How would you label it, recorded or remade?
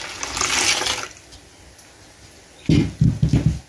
recorded